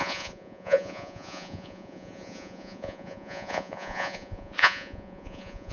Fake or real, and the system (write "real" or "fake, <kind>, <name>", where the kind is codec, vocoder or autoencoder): fake, vocoder, Vocos